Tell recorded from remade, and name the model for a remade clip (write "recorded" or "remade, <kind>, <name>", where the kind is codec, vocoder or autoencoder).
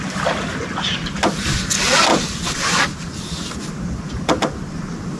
recorded